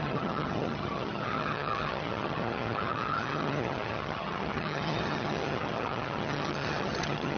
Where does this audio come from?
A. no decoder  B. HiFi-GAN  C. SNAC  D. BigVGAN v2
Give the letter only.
B